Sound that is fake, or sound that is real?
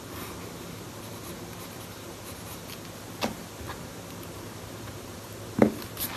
real